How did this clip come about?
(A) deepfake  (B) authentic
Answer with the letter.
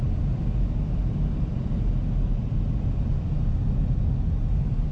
B